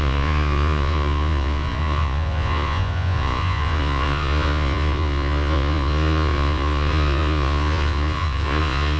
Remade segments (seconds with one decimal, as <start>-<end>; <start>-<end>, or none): 0.0-9.0